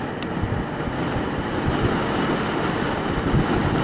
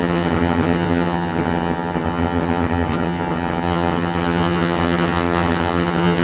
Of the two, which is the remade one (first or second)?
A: second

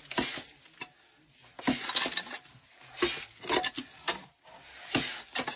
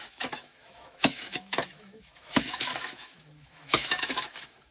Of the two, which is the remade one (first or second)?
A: second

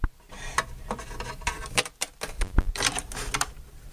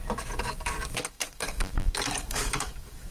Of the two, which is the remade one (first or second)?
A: second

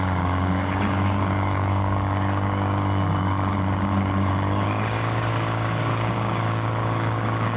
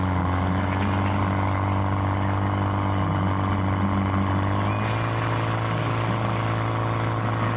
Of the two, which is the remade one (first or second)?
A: first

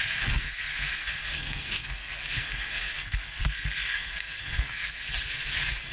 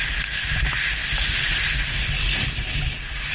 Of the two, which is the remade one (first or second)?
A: first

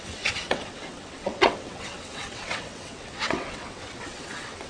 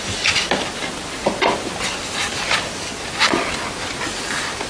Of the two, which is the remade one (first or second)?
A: first